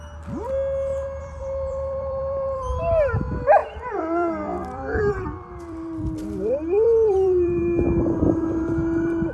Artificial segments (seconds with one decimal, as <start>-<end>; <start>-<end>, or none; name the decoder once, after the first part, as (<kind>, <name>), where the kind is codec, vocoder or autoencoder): 0.9-2.8 (vocoder, BigVGAN v2); 3.6-7.6